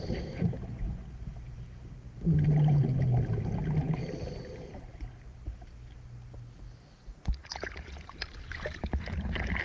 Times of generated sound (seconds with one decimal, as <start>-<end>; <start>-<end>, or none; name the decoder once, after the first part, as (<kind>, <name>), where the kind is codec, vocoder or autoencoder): 4.0-5.5 (vocoder, BigVGAN v2)